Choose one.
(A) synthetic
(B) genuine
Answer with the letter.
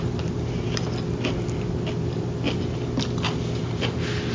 B